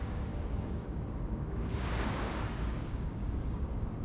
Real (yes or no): no